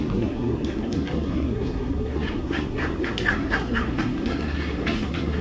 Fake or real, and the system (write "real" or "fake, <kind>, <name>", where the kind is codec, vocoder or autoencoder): fake, codec, SNAC